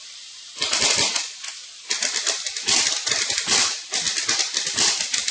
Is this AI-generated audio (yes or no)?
no